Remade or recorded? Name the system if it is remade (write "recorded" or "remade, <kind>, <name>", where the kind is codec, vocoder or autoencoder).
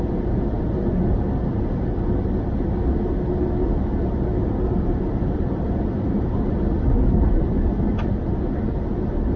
recorded